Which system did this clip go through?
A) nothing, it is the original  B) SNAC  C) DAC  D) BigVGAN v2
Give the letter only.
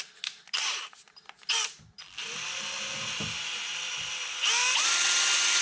A